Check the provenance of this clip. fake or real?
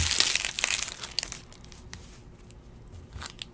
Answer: real